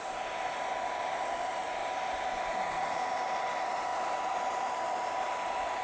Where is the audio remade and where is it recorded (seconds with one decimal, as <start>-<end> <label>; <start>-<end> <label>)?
0.0-1.8 remade; 1.8-3.4 recorded; 3.4-5.8 remade